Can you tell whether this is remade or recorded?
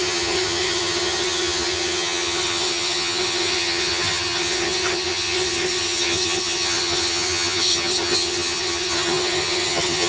remade